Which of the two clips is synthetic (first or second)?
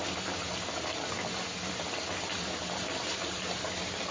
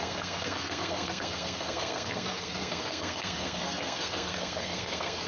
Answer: second